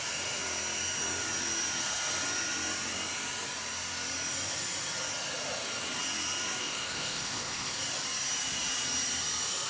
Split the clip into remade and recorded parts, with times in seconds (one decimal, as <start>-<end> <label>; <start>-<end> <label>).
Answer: 0.0-6.6 recorded; 6.6-7.8 remade; 7.8-9.7 recorded